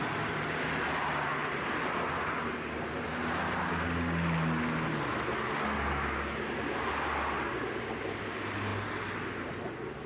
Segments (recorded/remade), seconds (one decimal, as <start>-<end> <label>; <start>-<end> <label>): 0.0-1.4 recorded; 1.4-2.6 remade; 2.6-10.1 recorded